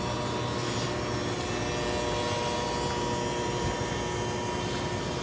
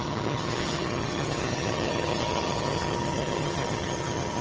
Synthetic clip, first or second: second